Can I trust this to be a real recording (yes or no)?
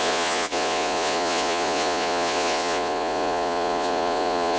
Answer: no